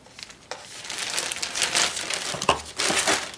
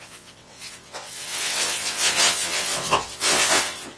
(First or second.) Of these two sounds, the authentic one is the first